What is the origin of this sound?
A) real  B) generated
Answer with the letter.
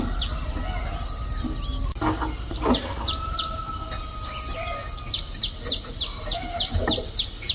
A